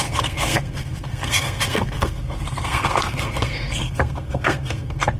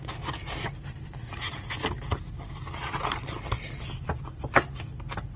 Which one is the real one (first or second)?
second